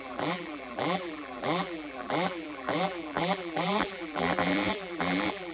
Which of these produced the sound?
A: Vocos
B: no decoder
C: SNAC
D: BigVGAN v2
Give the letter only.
D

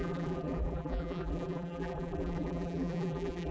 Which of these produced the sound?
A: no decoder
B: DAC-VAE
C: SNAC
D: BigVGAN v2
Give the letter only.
D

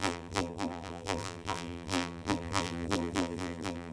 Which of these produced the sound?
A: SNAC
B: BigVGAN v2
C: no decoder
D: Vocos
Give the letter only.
B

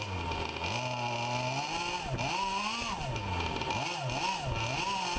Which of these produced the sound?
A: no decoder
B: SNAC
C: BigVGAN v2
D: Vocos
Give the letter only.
A